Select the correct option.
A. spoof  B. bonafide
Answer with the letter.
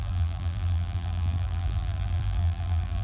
A